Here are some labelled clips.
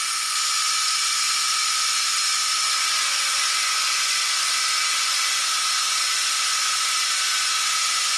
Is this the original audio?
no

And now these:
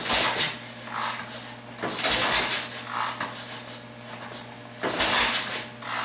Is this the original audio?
yes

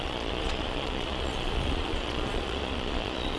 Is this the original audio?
no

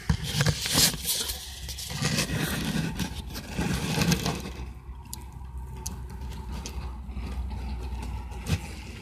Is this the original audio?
yes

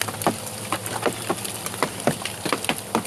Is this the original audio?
yes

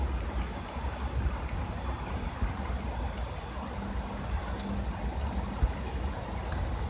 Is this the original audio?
yes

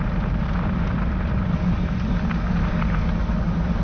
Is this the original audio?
yes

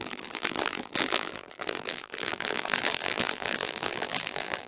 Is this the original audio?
no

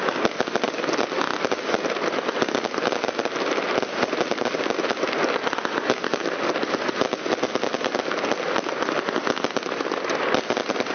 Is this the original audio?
yes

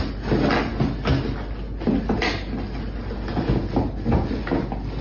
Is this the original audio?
yes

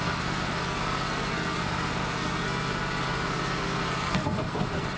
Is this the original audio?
no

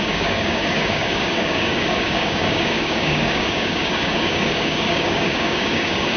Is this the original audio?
no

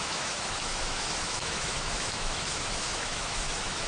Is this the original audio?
no